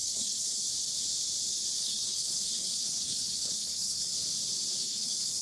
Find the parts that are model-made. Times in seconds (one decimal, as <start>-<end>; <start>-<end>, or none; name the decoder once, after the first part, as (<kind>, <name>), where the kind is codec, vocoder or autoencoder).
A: 0.0-0.7 (codec, HILCodec); 1.8-4.1; 4.8-5.4

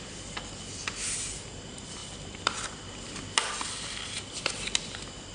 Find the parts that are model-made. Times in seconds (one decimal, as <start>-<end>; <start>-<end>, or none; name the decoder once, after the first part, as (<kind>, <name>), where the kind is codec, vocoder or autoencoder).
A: none

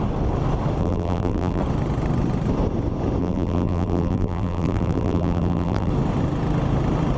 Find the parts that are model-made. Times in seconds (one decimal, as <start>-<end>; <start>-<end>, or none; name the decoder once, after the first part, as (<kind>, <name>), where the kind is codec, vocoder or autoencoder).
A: 0.8-1.6 (vocoder, BigVGAN v2); 3.2-5.9

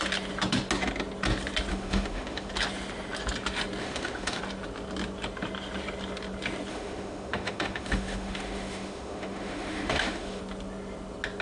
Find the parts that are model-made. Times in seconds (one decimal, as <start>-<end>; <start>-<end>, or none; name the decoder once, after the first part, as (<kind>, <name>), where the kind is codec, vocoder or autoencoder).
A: 1.7-2.5 (autoencoder, DAC-VAE); 3.8-4.4; 6.7-10.4

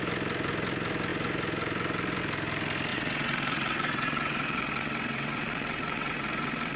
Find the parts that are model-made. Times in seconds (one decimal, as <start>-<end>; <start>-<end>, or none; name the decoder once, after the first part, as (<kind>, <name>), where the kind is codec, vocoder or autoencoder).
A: 2.9-6.8 (vocoder, WaveNeXt)

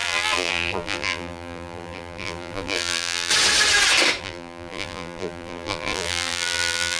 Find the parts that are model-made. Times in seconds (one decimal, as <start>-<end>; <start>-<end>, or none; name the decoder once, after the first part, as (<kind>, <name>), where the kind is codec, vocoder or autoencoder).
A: 0.0-3.3 (vocoder, BigVGAN v2); 4.2-7.0

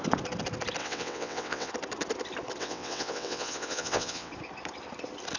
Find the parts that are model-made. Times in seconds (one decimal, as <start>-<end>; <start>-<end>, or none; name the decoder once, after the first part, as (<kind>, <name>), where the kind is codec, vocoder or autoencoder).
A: 0.8-1.7 (vocoder, WaveNeXt); 2.6-4.3